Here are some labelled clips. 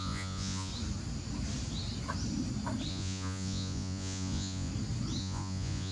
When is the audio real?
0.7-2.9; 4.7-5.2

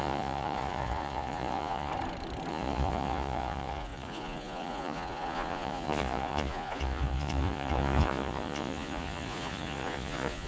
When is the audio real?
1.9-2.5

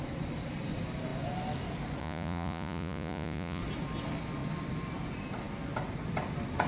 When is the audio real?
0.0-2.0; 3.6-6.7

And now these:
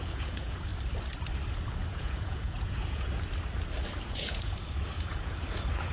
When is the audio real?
0.7-1.9; 3.3-4.0

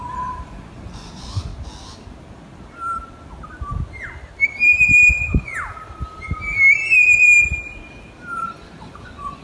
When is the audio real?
1.5-5.1; 5.5-8.3

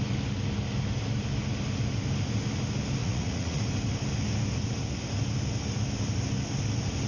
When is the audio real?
0.0-3.0; 3.6-7.1